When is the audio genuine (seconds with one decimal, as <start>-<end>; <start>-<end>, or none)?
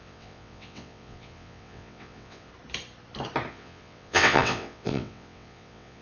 2.5-3.5